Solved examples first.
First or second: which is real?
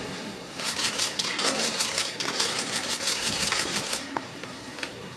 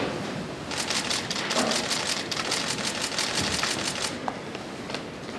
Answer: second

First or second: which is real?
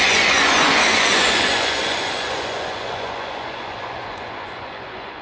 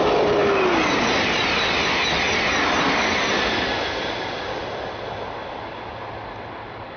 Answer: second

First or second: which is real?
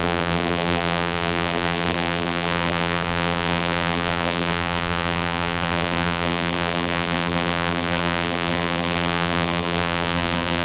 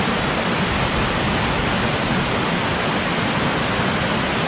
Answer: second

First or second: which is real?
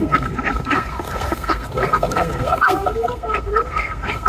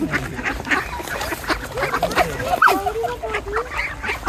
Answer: second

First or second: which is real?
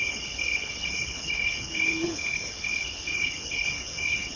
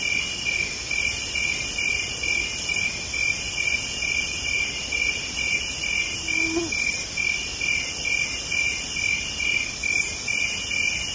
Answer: second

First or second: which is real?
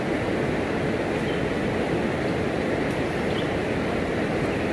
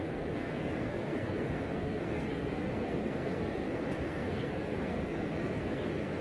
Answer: first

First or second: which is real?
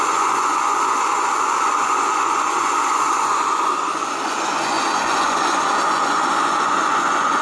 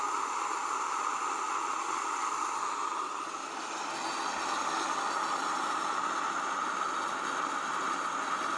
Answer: second